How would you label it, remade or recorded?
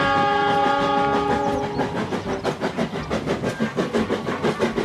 recorded